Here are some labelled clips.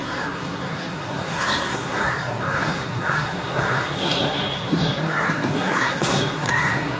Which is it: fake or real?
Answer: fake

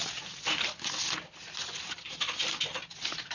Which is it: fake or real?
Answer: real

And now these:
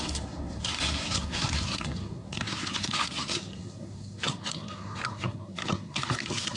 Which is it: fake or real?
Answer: fake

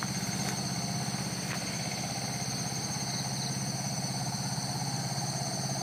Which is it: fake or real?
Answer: real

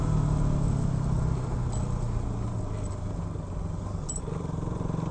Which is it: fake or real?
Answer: real